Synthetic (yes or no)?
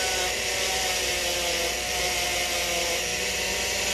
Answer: no